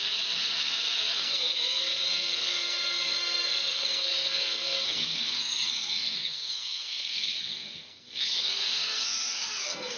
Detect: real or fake fake